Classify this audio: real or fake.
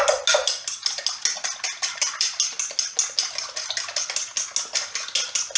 real